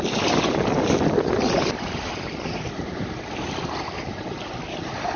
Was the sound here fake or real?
real